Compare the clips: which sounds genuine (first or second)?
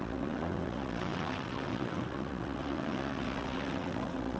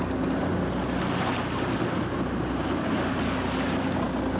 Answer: second